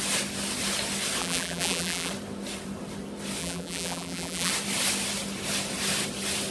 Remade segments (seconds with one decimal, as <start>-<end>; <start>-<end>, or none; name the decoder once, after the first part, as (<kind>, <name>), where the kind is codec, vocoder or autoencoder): 1.2-2.1 (vocoder, BigVGAN v2); 3.4-4.5